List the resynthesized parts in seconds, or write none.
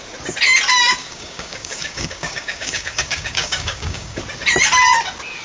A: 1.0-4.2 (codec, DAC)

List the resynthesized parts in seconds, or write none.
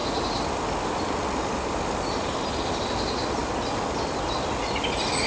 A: none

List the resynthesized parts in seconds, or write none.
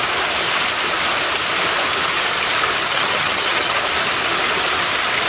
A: 2.8-3.8 (vocoder, HiFi-GAN)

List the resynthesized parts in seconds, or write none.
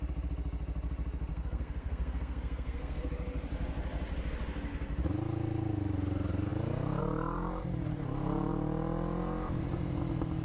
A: 1.3-3.1 (codec, SNAC)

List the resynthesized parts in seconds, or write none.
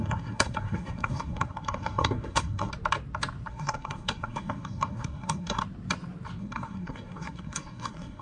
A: 0.0-2.7 (codec, SNAC); 3.5-5.6; 6.4-8.2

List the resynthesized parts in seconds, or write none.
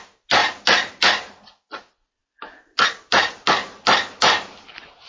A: none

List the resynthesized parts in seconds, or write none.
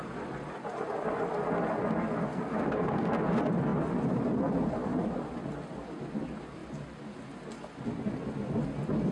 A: 2.3-3.1 (codec, SNAC)